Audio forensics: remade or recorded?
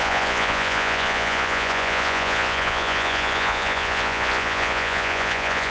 remade